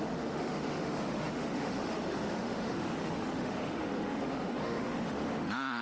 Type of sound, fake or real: fake